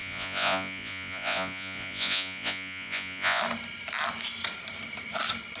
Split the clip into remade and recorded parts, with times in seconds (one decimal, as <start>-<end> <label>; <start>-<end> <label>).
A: 0.0-3.4 remade; 3.4-5.6 recorded